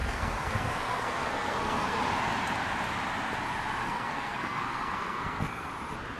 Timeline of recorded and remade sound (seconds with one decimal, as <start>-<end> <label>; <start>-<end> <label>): 0.0-2.0 remade; 2.0-3.8 recorded; 3.8-5.7 remade; 5.7-6.2 recorded